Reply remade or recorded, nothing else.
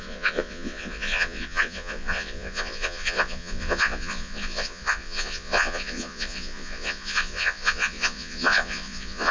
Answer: remade